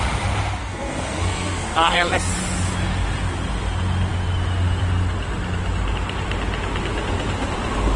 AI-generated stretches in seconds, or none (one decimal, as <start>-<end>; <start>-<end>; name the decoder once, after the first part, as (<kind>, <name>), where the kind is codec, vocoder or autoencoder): 0.6-2.3 (codec, SNAC)